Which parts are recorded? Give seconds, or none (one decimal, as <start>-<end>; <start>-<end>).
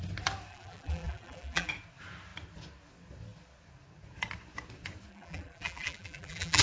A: 0.0-0.5; 1.7-5.1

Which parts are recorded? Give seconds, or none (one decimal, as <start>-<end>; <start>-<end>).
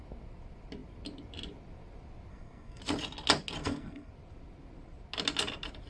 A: 0.0-2.3; 2.8-3.6; 4.1-5.9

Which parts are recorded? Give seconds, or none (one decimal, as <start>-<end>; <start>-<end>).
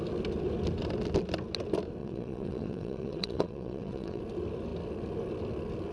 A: 0.0-2.0; 4.2-5.9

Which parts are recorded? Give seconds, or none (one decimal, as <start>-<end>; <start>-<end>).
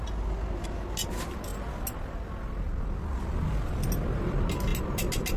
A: 0.0-5.4